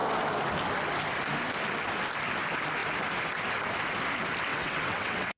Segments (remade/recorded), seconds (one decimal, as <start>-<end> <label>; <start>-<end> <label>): 0.0-4.5 recorded; 4.5-5.4 remade